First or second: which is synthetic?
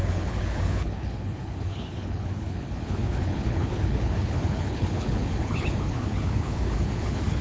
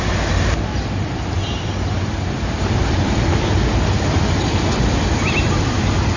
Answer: first